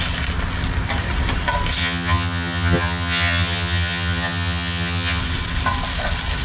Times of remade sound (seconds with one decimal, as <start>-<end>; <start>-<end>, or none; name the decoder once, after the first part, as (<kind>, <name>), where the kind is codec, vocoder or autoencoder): 1.8-5.2 (vocoder, HiFi-GAN)